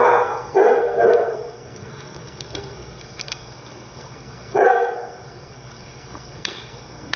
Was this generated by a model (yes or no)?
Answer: yes